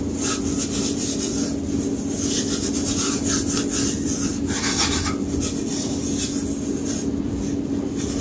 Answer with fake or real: real